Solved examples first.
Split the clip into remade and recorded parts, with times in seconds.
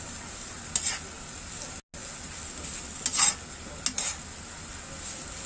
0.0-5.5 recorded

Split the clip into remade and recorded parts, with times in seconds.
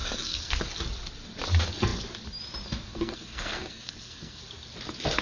0.0-0.6 remade; 0.6-2.9 recorded; 2.9-4.4 remade; 4.4-5.2 recorded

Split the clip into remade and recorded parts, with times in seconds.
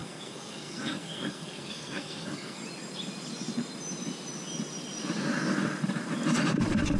0.0-2.6 remade; 2.6-7.0 recorded